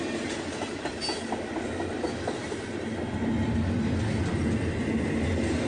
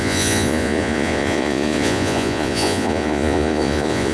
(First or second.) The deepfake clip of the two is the second